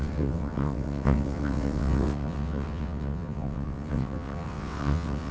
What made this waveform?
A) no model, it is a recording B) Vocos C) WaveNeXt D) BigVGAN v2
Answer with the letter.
C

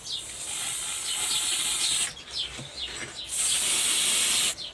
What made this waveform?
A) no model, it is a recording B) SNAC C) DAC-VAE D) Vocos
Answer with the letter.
A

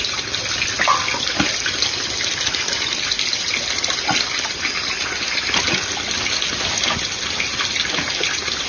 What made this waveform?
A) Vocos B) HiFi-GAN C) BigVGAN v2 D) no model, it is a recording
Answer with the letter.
D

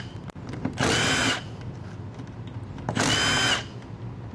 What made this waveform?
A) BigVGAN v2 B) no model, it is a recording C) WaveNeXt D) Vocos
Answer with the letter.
B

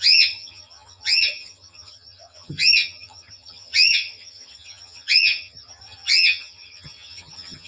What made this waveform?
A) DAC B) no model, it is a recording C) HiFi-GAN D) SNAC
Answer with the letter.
C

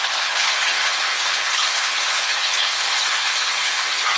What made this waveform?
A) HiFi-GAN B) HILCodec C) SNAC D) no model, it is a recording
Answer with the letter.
B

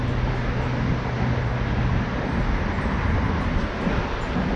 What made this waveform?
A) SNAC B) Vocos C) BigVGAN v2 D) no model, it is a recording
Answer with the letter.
D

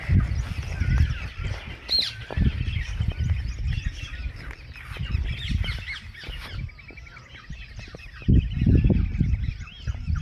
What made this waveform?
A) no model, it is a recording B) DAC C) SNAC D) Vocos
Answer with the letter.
A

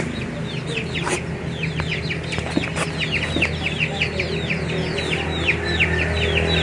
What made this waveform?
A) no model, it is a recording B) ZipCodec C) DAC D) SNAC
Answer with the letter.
A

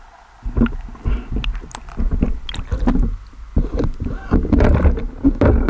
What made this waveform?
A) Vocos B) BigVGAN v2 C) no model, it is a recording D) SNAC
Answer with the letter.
C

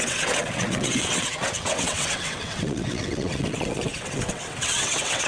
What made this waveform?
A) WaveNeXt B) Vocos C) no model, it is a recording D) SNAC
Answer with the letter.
A